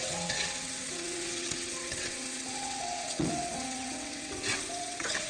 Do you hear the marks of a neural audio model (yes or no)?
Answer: yes